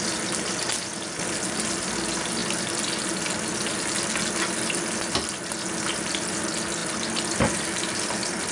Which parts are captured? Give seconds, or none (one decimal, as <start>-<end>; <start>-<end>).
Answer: 0.0-8.5